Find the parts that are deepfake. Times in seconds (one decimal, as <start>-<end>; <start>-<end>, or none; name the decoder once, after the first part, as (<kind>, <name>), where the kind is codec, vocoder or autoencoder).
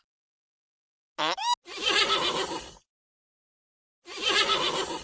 none